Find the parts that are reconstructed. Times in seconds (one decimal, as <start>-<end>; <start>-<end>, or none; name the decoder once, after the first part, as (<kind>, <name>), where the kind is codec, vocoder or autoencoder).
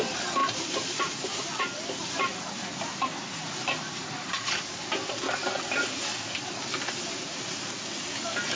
0.4-1.6 (vocoder, BigVGAN v2)